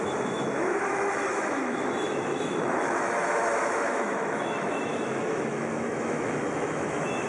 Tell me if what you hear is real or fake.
fake